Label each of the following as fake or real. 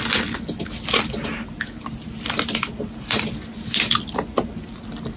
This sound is real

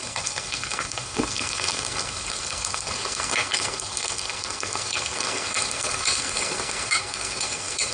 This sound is fake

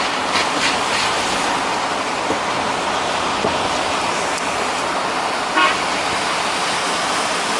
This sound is real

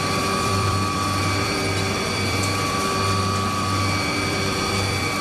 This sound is fake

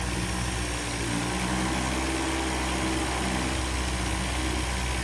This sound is real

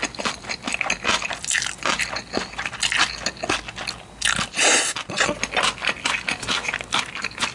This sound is real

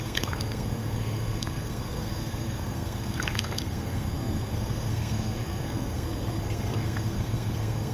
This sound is fake